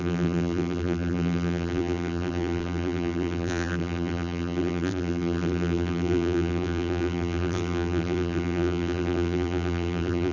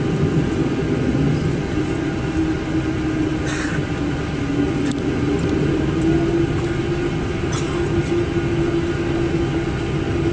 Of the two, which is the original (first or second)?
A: second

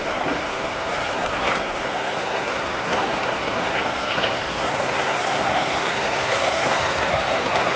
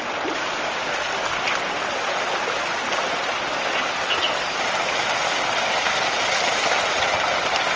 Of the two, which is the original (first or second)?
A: second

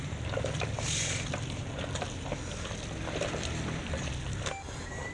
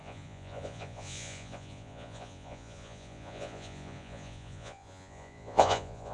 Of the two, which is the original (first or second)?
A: first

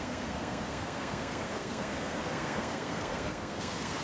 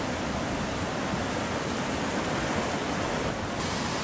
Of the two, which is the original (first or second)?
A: second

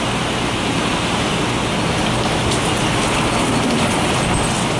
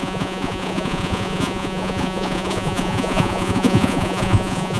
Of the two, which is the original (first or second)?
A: first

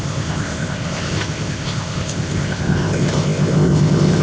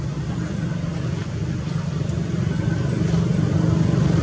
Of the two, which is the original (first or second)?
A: second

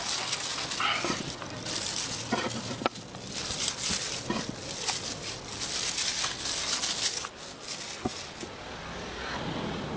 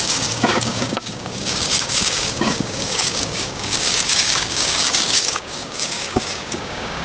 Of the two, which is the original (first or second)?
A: first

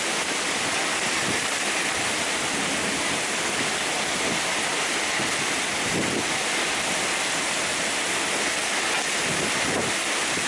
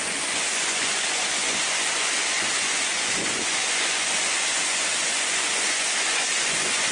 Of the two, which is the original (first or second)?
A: first